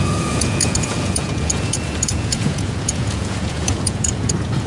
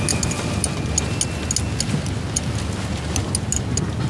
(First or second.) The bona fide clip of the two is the second